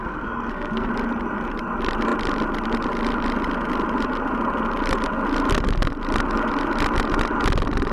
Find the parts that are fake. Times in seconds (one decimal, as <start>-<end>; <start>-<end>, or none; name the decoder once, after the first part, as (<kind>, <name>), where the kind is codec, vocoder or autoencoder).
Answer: 0.0-0.9 (codec, SNAC)